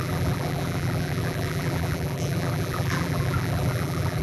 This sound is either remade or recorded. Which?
remade